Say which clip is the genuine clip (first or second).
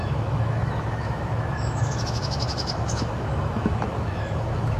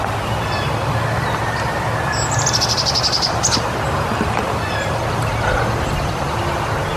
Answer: second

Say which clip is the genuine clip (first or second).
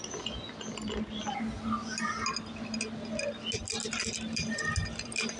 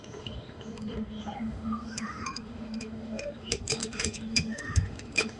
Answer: first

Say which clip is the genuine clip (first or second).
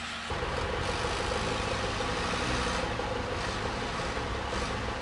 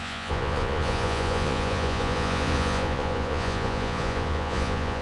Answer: first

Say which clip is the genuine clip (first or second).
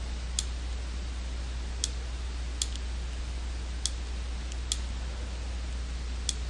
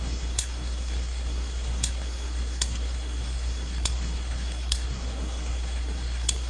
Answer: first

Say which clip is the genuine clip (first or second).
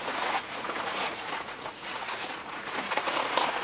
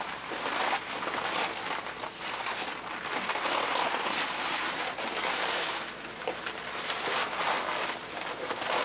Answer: second